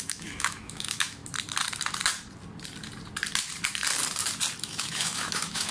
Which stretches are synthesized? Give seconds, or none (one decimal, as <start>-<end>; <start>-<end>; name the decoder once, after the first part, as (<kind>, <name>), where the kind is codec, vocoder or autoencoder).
0.0-1.2 (autoencoder, DAC-VAE); 4.6-5.7